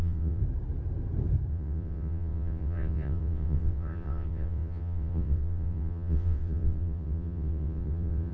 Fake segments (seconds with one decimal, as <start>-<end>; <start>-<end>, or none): 0.0-0.4; 1.5-8.3